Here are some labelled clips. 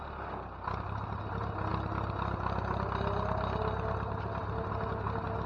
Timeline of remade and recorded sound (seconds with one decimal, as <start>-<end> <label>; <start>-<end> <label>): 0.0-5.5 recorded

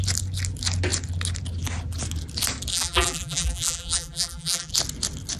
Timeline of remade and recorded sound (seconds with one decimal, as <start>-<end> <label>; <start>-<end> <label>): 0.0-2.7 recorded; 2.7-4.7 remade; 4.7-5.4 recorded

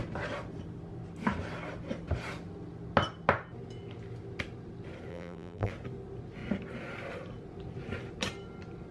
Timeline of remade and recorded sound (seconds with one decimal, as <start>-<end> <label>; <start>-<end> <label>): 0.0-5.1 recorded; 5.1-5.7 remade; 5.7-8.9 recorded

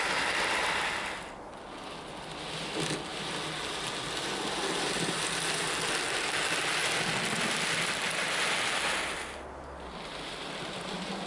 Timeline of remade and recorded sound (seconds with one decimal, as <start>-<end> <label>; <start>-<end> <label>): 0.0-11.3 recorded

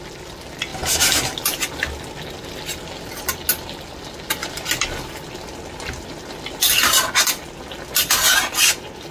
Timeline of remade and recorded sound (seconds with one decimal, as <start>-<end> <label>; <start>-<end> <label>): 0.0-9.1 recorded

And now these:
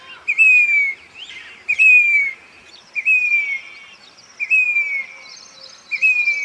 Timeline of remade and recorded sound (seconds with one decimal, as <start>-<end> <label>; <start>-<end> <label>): 0.0-0.9 recorded; 0.9-4.2 remade; 4.2-6.4 recorded